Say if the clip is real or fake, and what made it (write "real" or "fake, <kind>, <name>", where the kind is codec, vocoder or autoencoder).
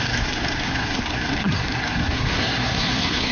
fake, codec, SNAC